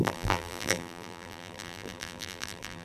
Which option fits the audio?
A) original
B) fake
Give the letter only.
B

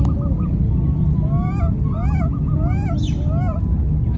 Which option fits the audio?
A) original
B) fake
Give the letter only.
A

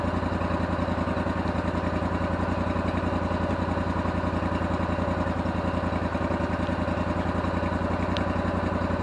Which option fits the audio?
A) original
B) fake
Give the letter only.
A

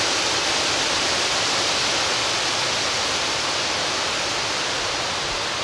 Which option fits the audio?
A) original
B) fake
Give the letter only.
A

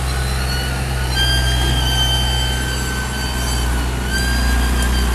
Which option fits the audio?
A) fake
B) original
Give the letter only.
B